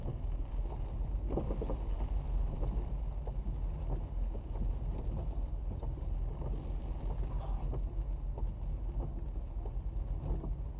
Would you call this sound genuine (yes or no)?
yes